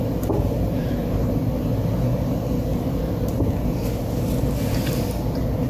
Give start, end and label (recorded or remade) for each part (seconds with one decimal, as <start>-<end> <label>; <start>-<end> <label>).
0.0-5.7 recorded